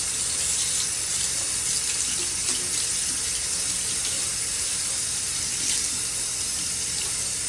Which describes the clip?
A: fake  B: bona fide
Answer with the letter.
B